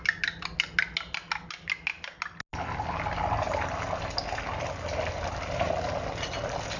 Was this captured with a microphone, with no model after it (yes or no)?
yes